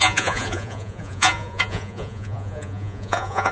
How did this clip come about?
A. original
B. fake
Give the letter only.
B